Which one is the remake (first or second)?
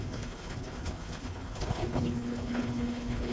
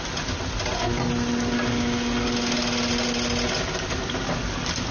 first